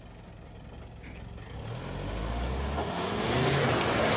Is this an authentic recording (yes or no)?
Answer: yes